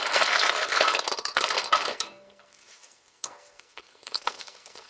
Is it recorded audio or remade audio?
remade